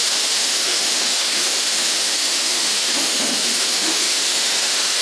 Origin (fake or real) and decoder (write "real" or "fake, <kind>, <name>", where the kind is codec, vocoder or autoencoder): fake, autoencoder, DAC-VAE